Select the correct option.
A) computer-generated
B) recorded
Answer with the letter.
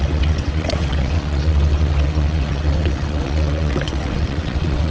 A